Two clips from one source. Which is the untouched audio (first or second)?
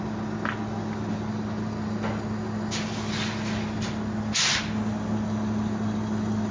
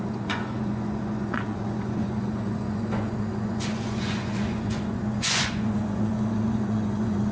first